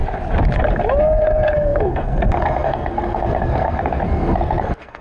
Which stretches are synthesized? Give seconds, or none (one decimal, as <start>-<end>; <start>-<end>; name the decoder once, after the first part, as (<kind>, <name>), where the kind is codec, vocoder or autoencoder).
1.0-5.0 (codec, SNAC)